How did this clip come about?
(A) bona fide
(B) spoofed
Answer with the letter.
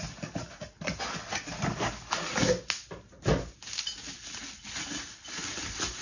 A